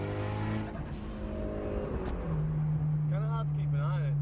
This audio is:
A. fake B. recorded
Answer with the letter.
B